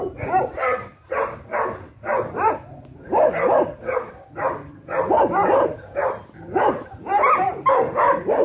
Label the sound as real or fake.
real